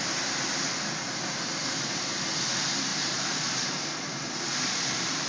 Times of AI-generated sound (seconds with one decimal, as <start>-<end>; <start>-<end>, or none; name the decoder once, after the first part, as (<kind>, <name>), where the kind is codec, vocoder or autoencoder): 1.5-2.1 (vocoder, BigVGAN v2); 2.9-5.3